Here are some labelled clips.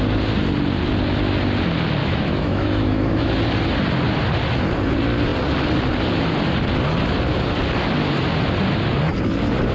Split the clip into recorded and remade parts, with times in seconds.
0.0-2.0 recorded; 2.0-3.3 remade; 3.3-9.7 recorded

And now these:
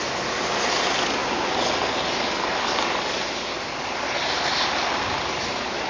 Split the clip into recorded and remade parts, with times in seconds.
0.0-5.9 recorded